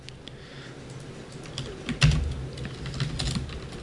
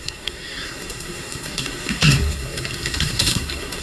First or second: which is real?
first